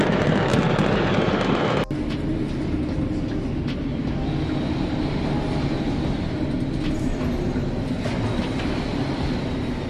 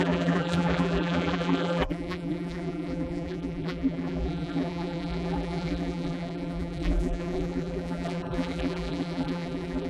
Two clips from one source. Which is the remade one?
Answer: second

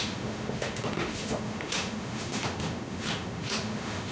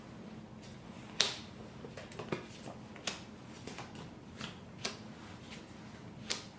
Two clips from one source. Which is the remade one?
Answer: first